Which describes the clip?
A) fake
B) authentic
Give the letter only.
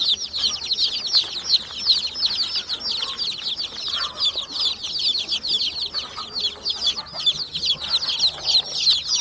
B